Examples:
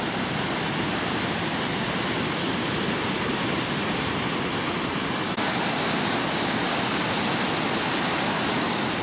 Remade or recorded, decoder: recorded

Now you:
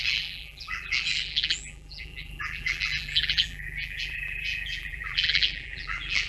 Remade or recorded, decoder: remade, vocoder, BigVGAN v2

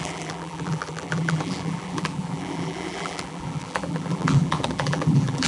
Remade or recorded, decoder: remade, vocoder, BigVGAN v2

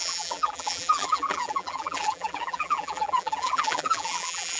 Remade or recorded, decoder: remade, vocoder, BigVGAN v2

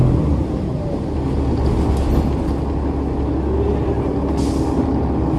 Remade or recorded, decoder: recorded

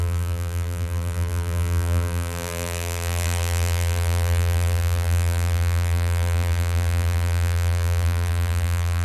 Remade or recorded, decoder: remade, vocoder, BigVGAN v2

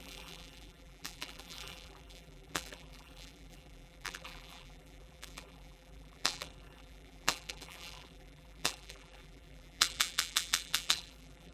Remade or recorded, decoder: remade, vocoder, BigVGAN v2